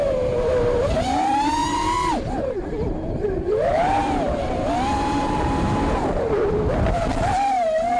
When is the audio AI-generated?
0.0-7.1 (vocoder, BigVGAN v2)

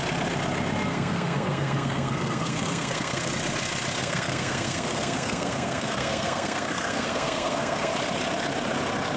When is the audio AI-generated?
0.9-3.3 (codec, SNAC); 4.0-7.9

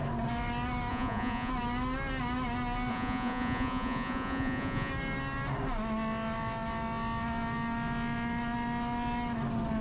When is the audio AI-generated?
0.9-1.5 (vocoder, Vocos); 2.9-4.9

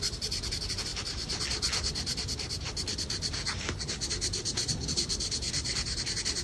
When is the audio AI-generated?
none

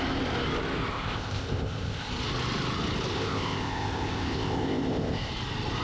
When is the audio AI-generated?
0.9-2.1 (codec, ZipCodec); 3.1-5.3